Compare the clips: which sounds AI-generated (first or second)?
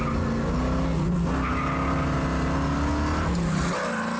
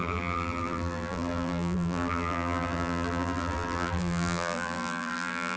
second